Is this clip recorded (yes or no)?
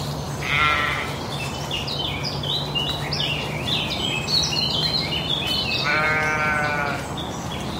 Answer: yes